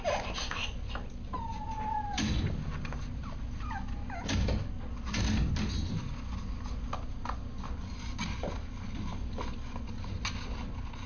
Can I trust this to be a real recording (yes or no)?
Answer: yes